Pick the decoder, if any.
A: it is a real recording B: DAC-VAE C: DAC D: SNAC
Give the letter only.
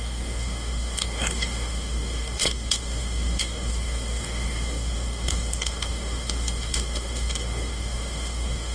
C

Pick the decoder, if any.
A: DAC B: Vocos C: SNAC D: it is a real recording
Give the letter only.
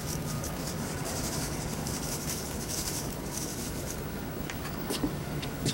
A